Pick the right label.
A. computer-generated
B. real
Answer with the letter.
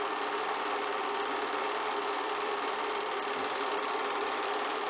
B